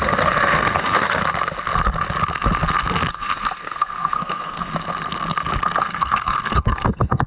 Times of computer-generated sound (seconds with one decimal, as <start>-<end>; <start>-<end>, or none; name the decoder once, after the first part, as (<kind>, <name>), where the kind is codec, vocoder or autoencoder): 0.0-1.2 (codec, SNAC); 3.1-4.7; 5.8-7.3